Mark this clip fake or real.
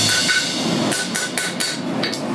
real